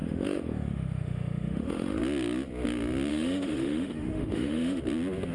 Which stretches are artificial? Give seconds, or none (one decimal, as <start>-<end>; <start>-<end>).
0.0-2.0; 3.1-4.8